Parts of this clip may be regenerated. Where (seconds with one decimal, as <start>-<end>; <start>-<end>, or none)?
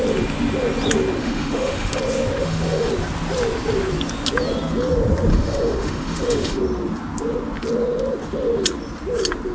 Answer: 1.2-2.0; 2.4-2.9; 5.3-6.6